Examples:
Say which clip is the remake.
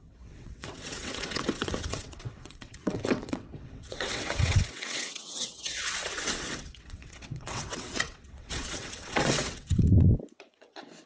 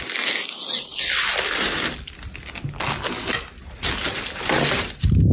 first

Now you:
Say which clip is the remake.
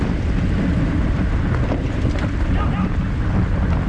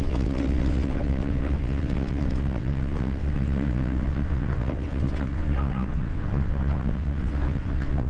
second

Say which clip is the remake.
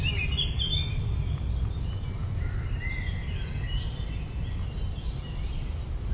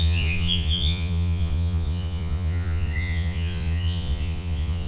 second